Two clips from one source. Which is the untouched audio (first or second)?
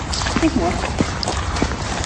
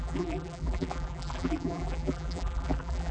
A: first